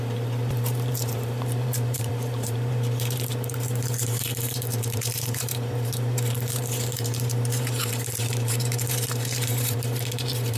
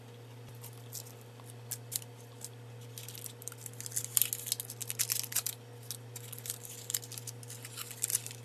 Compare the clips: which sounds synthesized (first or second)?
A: first